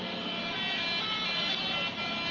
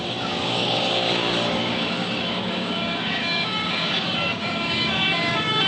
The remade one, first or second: second